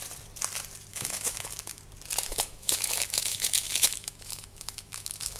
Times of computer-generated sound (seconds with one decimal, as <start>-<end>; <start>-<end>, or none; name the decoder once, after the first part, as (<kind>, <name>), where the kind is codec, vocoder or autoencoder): 0.9-1.8 (autoencoder, DAC-VAE); 2.3-5.4